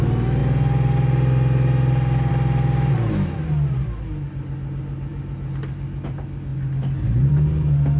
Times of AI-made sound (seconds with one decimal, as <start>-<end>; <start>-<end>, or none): none